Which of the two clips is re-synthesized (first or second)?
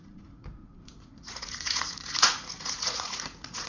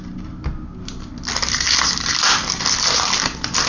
first